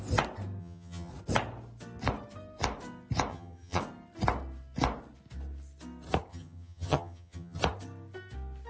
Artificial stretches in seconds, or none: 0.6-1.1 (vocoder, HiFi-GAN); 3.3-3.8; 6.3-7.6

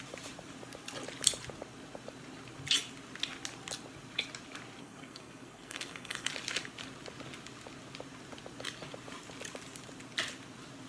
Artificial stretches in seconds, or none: 4.8-6.3 (codec, SNAC)

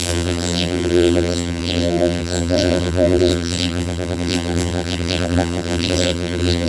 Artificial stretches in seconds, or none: 0.0-6.7 (vocoder, BigVGAN v2)

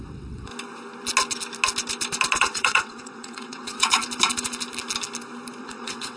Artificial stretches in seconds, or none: 0.0-0.5 (vocoder, WaveNeXt); 2.4-4.0; 5.6-6.2

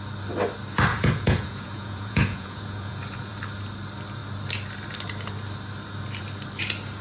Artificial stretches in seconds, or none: 0.9-3.4 (vocoder, Vocos)

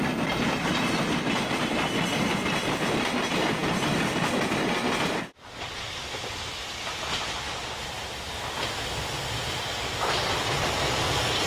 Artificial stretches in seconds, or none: none

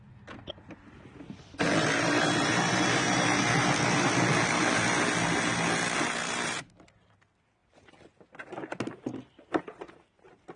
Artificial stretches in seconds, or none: none

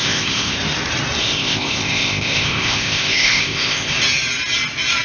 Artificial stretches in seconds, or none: 0.0-0.6 (codec, ZipCodec); 1.2-3.9